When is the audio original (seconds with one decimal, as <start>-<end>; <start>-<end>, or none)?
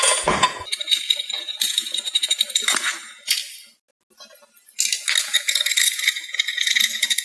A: 3.4-5.2